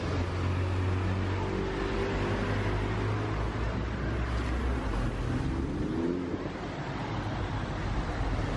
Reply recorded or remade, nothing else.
recorded